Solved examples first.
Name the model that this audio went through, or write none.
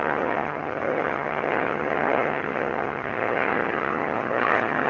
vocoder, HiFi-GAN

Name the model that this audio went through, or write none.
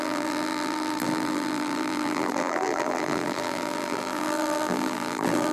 vocoder, BigVGAN v2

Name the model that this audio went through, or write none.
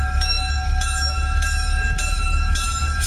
autoencoder, DAC-VAE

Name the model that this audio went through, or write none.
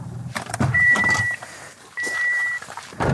vocoder, BigVGAN v2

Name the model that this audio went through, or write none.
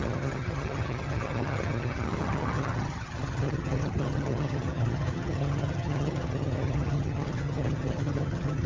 vocoder, HiFi-GAN